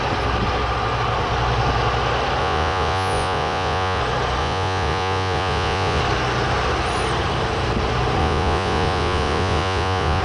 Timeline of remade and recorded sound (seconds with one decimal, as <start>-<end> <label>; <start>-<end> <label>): 0.0-2.4 recorded; 2.4-4.0 remade; 4.0-4.4 recorded; 4.4-6.0 remade; 6.0-8.2 recorded; 8.2-10.2 remade

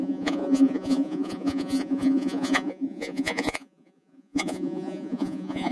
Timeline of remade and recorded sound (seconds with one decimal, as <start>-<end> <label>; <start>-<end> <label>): 0.0-5.7 remade

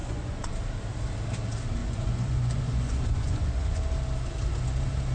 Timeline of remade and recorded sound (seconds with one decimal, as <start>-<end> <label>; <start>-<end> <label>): 0.0-0.5 remade; 0.5-1.8 recorded; 1.8-3.8 remade; 3.8-5.1 recorded

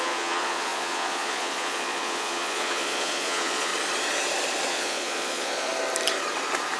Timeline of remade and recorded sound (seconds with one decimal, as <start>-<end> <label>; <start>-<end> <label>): 0.0-3.7 remade; 3.7-4.7 recorded; 4.7-5.7 remade; 5.7-6.8 recorded

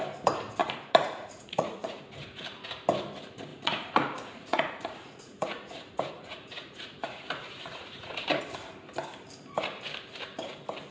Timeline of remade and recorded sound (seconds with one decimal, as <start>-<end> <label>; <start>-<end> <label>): 0.0-0.6 recorded; 0.6-2.0 remade; 2.0-3.5 recorded; 3.5-8.4 remade; 8.4-10.9 recorded

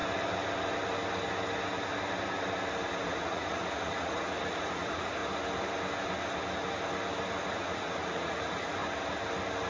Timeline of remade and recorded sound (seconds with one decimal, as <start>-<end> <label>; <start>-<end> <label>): 0.0-3.0 recorded; 3.0-5.2 remade; 5.2-7.5 recorded; 7.5-8.8 remade; 8.8-9.7 recorded